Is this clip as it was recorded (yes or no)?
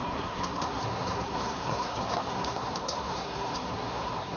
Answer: no